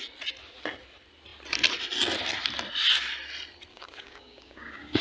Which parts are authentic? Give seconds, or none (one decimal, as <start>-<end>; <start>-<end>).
0.0-3.7